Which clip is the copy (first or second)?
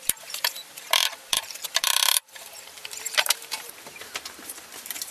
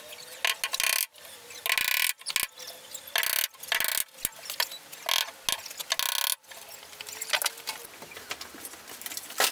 first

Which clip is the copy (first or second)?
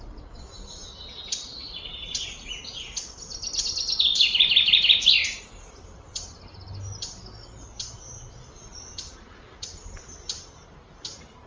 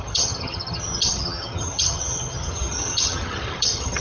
second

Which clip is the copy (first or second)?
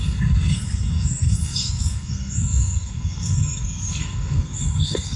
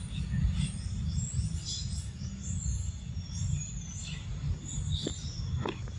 first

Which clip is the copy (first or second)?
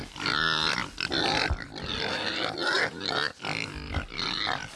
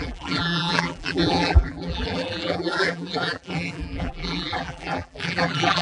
second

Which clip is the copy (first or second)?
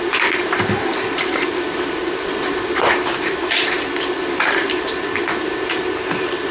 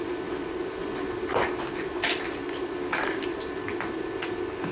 first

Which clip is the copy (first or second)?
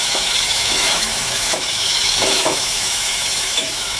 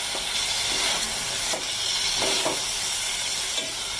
first